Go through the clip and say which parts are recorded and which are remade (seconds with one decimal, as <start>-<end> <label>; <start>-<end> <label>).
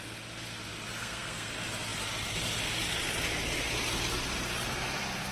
0.0-1.0 recorded; 1.0-1.5 remade; 1.5-5.3 recorded